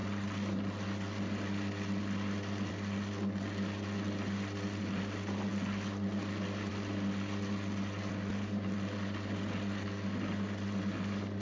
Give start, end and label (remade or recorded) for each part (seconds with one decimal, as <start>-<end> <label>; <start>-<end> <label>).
0.0-11.4 recorded